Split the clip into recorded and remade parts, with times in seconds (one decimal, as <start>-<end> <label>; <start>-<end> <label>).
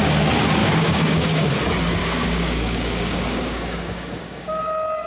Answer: 0.0-0.6 recorded; 0.6-1.5 remade; 1.5-2.0 recorded; 2.0-4.6 remade; 4.6-5.1 recorded